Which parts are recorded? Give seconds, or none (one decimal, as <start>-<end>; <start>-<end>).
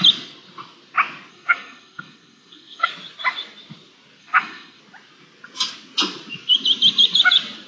0.0-1.3; 2.9-4.2; 4.8-7.7